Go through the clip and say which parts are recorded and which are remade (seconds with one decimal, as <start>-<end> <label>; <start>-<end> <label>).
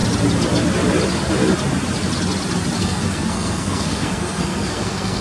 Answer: 0.0-2.8 recorded; 2.8-5.2 remade